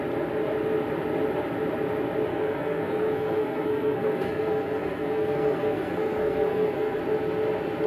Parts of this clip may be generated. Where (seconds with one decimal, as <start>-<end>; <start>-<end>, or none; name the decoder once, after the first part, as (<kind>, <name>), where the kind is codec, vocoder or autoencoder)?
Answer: 2.3-7.0 (codec, SNAC)

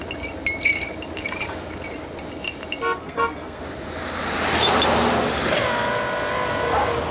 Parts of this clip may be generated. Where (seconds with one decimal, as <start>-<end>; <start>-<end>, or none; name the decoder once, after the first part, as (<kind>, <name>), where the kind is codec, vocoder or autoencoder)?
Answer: 3.0-3.6 (codec, SNAC)

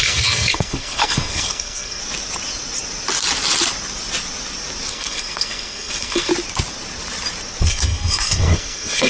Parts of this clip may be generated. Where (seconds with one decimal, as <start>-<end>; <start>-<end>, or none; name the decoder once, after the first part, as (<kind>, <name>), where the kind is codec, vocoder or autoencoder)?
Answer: 0.0-2.0 (codec, SNAC); 4.9-6.3; 7.6-9.1

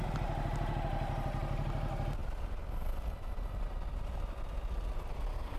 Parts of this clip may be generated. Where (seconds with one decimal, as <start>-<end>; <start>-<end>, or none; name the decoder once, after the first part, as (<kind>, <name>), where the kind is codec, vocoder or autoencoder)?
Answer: none

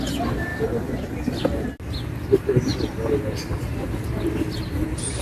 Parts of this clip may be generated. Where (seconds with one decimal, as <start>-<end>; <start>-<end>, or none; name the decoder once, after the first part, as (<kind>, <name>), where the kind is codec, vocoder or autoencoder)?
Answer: none

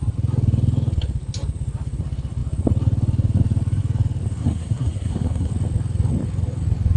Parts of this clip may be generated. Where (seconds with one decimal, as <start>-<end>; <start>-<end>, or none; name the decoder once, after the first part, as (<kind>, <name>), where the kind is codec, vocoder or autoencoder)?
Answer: 4.4-5.5 (codec, SNAC)

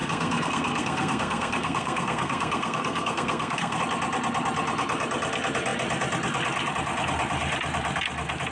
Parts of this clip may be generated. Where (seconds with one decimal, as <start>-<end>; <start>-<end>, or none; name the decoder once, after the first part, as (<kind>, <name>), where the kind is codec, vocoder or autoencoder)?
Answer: 0.0-3.8 (codec, SNAC)

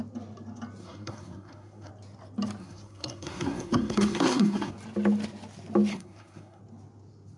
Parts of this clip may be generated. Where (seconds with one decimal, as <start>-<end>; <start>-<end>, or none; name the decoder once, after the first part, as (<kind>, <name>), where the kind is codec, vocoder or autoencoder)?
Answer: 0.8-1.9 (codec, SNAC); 2.6-4.7; 5.9-6.6